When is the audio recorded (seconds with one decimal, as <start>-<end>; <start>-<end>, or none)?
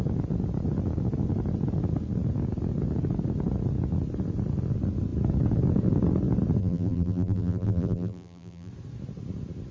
0.0-6.6; 8.7-9.7